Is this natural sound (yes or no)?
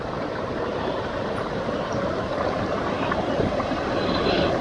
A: no